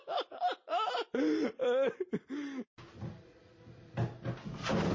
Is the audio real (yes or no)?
yes